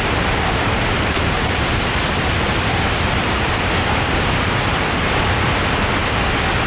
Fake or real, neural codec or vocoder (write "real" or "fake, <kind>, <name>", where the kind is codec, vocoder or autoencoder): fake, vocoder, BigVGAN v2